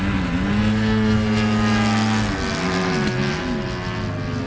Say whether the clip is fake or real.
real